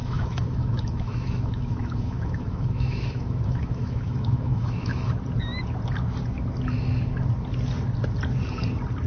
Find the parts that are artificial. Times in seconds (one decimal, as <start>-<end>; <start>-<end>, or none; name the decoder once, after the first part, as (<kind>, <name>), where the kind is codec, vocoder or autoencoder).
0.0-5.1 (autoencoder, DAC-VAE)